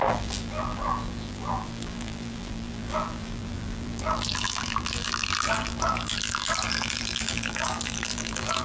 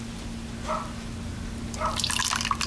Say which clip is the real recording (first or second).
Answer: second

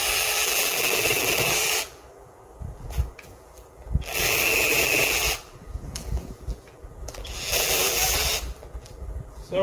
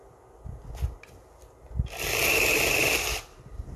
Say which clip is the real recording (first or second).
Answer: second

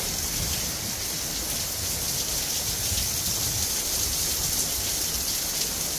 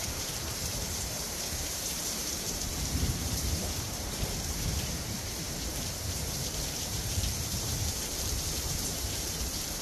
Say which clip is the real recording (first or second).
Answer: first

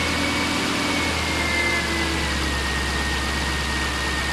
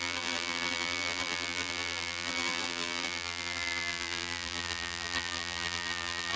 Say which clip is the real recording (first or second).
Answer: first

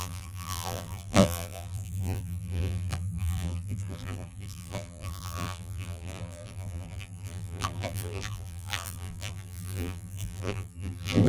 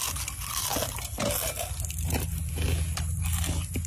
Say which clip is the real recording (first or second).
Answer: second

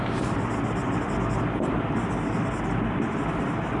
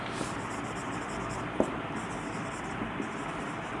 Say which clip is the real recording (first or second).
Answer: first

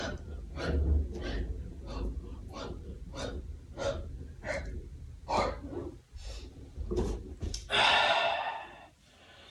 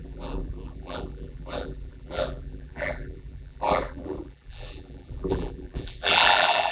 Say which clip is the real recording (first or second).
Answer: first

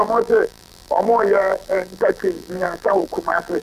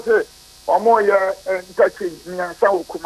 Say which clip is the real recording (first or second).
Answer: second